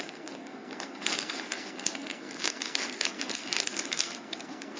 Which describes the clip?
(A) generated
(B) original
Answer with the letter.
A